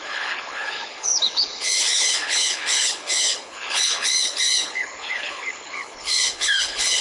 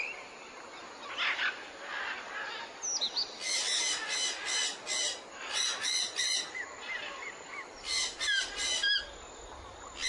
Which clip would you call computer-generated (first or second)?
first